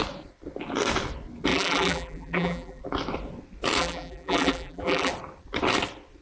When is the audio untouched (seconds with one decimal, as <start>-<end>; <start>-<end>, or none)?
0.0-1.5; 2.8-3.8; 5.1-6.2

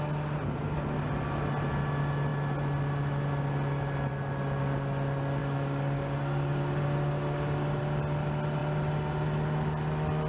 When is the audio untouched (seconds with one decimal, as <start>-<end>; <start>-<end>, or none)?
0.0-5.4; 7.8-10.3

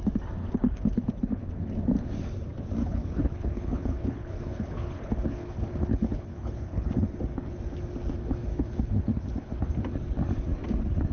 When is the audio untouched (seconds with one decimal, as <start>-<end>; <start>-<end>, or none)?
0.0-0.4; 1.5-2.8; 6.9-8.5; 9.5-11.1